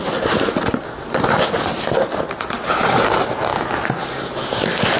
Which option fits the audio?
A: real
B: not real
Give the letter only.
A